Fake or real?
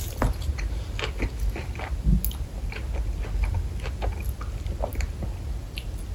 real